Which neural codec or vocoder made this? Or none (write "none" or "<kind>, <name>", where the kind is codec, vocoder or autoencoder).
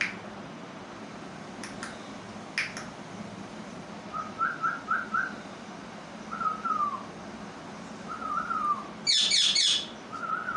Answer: none